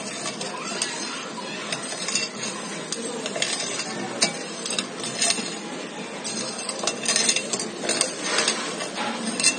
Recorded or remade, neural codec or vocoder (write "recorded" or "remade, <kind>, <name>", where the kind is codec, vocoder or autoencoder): recorded